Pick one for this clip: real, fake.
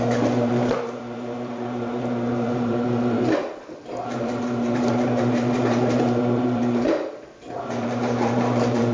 fake